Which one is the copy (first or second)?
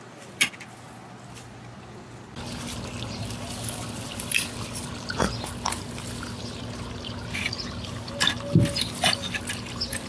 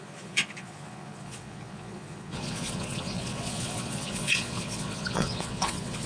second